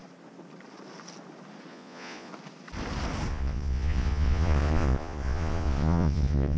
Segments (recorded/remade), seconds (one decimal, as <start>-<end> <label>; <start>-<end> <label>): 0.0-1.7 recorded; 1.7-2.3 remade; 2.3-3.3 recorded; 3.3-6.6 remade

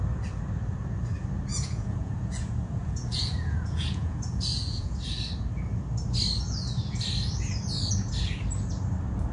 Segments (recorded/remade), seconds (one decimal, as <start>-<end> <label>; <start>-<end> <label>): 0.0-1.5 recorded; 1.5-5.2 remade; 5.2-9.3 recorded

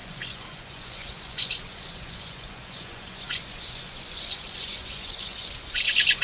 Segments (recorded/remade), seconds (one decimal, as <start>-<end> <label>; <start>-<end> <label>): 0.0-6.2 remade

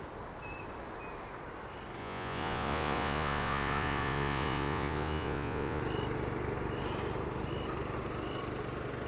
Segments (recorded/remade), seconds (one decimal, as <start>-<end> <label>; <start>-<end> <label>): 0.0-2.0 recorded; 2.0-5.8 remade; 5.8-9.1 recorded

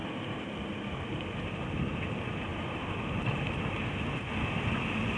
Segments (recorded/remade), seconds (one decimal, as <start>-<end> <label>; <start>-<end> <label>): 0.0-5.2 recorded

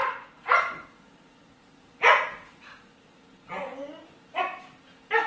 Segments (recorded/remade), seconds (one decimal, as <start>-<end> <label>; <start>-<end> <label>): 0.0-3.2 remade; 3.2-5.3 recorded